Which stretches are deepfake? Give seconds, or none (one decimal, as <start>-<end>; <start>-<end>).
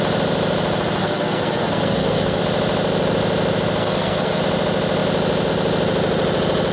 1.0-2.4; 3.8-4.4